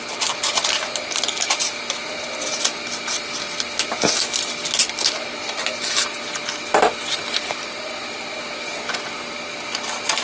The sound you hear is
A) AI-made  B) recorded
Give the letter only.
B